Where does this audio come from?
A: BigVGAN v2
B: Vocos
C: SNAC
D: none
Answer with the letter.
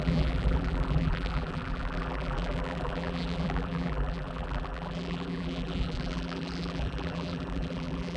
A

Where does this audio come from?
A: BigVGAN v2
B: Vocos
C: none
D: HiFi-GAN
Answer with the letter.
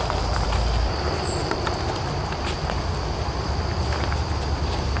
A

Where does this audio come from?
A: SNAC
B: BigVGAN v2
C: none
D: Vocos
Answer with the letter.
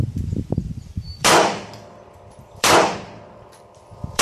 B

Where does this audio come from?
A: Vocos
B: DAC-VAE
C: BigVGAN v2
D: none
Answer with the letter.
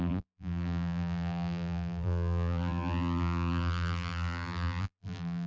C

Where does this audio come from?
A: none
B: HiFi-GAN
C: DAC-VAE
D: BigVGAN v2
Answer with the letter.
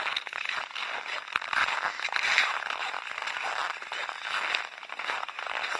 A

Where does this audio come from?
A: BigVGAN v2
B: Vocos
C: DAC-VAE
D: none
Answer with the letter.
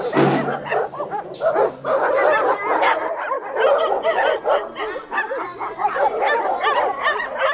D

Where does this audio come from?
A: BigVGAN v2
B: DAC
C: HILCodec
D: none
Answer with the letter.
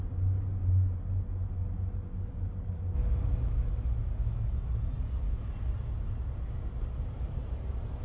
D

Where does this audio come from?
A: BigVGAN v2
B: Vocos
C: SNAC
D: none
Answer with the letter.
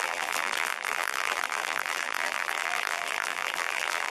A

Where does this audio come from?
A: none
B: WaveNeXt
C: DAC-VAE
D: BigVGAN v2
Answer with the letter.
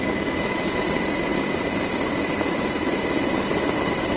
D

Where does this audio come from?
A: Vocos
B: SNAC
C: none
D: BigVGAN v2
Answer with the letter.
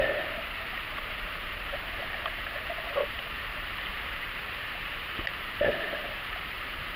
D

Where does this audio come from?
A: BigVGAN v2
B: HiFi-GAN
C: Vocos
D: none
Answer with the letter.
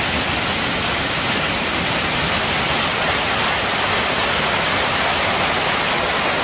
D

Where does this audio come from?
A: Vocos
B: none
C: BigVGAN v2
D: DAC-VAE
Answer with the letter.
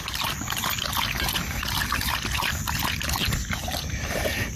B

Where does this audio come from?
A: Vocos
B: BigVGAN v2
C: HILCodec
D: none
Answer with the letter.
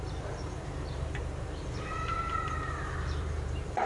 B